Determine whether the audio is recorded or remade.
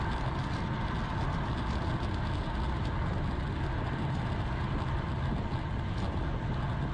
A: recorded